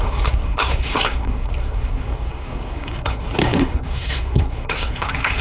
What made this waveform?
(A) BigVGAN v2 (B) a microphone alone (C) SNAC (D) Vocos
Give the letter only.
C